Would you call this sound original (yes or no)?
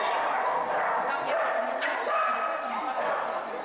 yes